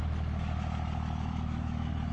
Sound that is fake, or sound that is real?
fake